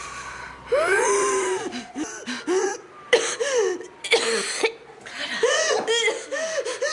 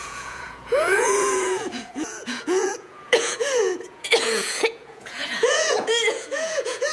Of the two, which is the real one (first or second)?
first